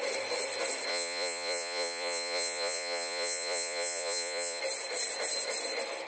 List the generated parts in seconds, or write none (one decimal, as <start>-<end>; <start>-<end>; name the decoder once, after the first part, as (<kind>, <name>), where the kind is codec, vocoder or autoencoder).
0.9-4.6 (vocoder, Vocos)